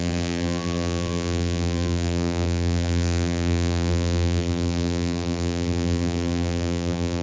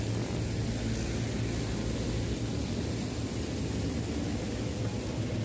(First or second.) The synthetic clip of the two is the first